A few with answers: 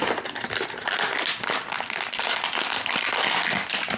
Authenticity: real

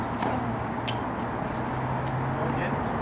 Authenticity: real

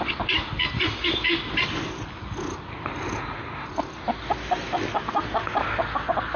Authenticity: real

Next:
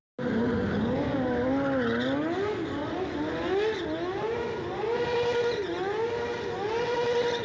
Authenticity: real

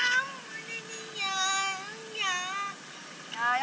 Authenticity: real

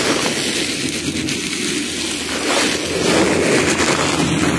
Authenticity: real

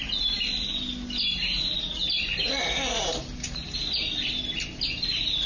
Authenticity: real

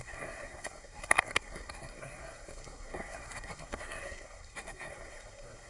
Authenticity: fake